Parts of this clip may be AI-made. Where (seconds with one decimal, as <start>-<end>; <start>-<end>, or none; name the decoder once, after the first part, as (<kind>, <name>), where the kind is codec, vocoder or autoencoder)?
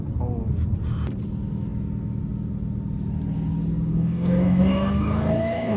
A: 3.9-5.8 (codec, DAC)